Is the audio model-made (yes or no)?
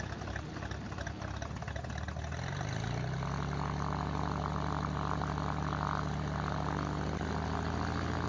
no